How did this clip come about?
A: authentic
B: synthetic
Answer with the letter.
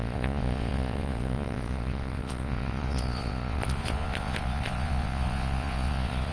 B